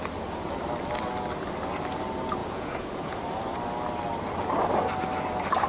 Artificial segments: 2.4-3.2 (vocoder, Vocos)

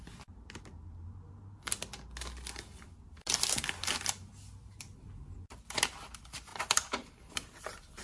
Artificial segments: none

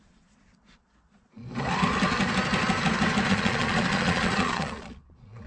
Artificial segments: 0.0-1.4 (vocoder, Vocos); 3.3-5.5

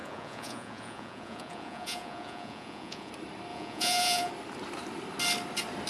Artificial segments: 0.0-3.1 (vocoder, Vocos); 3.5-4.3